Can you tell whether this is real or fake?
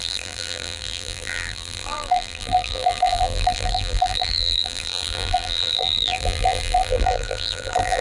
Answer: fake